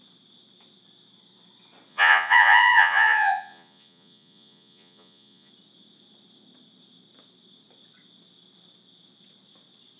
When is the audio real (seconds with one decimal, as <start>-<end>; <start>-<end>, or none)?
0.0-1.9; 5.5-10.0